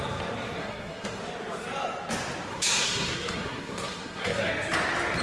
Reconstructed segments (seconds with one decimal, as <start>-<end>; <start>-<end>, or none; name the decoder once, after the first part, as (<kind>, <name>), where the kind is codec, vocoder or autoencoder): 0.6-1.2 (codec, SNAC); 2.5-4.5